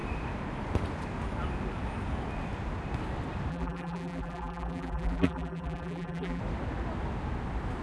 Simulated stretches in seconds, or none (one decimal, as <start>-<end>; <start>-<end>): 3.5-6.4